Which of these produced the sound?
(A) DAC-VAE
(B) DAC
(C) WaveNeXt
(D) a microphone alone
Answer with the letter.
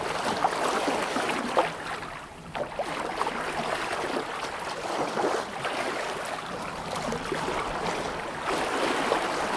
D